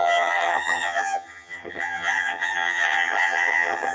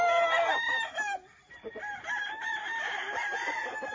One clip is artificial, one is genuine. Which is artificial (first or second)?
first